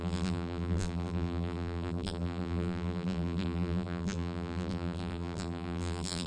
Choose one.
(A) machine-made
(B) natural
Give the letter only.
A